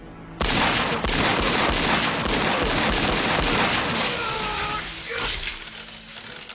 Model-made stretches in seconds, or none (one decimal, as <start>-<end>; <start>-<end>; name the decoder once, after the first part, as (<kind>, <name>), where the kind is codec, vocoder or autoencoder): none